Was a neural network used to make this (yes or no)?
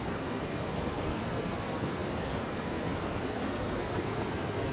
yes